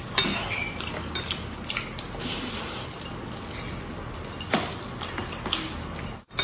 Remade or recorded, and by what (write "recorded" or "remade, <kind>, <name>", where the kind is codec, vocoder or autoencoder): recorded